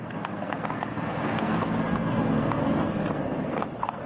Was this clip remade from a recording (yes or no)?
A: yes